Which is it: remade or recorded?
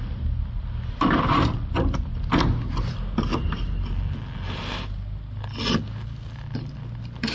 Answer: recorded